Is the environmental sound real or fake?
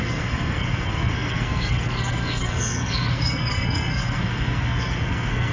fake